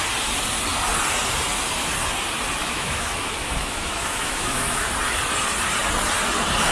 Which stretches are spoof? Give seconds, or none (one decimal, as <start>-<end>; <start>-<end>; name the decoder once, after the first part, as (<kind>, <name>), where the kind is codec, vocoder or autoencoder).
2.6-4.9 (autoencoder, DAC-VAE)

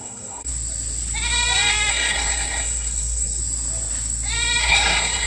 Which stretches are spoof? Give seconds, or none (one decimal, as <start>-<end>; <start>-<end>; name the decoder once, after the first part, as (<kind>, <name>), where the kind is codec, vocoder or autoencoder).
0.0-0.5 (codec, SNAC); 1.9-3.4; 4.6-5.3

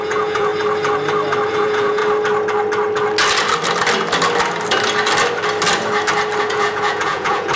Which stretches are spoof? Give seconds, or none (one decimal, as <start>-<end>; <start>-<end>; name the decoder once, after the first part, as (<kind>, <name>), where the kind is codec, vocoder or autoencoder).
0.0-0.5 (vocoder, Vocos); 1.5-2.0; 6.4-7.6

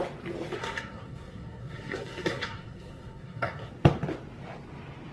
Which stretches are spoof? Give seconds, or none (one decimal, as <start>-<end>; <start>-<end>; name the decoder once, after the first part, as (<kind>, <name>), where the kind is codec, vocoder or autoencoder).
0.6-3.7 (codec, SNAC)

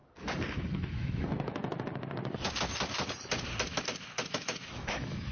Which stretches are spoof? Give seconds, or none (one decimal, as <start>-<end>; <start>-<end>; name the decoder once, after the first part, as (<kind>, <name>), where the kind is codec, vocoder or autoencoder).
0.5-1.6 (autoencoder, DAC-VAE); 4.3-5.3

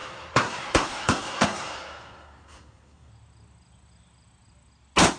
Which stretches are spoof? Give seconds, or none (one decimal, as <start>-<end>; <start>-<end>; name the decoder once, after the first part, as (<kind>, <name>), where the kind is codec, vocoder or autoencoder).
0.0-3.1 (codec, SNAC)

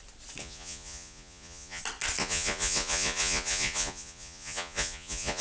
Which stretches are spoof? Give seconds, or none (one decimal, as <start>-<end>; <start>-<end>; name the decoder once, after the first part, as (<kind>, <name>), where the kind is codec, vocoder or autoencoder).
0.4-1.8 (vocoder, Vocos); 2.2-5.4